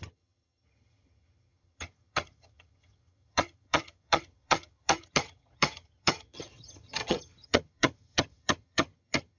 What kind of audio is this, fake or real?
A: fake